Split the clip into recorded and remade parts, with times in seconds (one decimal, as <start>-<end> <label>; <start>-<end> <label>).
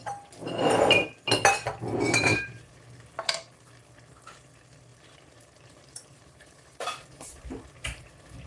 0.0-2.3 recorded; 2.3-2.8 remade; 2.8-4.9 recorded; 4.9-8.1 remade; 8.1-8.5 recorded